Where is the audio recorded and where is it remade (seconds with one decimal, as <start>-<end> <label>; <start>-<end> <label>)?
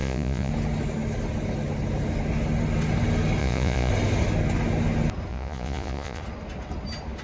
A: 0.0-0.5 remade; 0.5-3.4 recorded; 3.4-3.9 remade; 3.9-5.3 recorded; 5.3-6.2 remade; 6.2-7.2 recorded